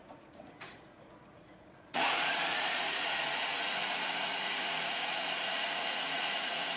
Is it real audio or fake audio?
fake